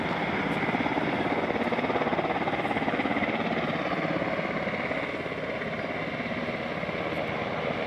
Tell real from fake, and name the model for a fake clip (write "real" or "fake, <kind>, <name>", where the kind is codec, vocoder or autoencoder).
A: real